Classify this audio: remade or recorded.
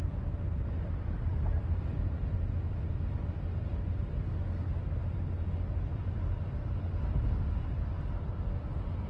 recorded